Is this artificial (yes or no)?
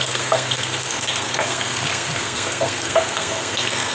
yes